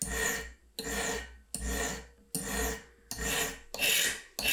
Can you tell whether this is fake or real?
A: real